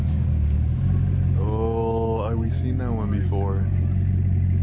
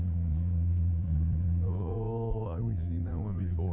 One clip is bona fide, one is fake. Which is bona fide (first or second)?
first